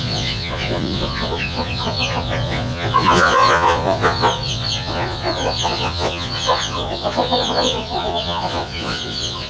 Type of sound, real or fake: fake